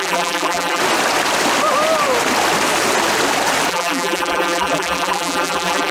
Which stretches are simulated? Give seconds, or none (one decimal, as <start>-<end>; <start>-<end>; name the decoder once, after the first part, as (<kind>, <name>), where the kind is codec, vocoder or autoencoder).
0.0-0.8 (vocoder, BigVGAN v2); 3.7-5.9